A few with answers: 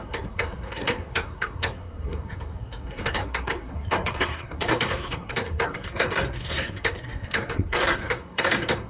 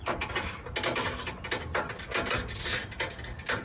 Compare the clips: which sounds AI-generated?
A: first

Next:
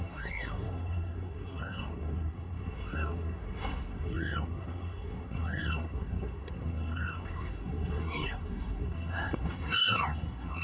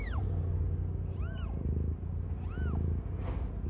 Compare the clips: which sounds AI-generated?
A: first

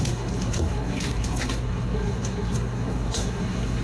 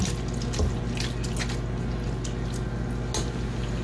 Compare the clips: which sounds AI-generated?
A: first